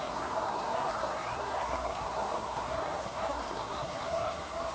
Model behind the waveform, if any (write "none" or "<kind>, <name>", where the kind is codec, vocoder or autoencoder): codec, SNAC